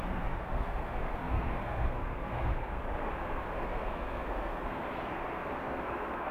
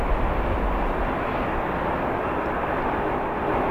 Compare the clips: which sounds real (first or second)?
second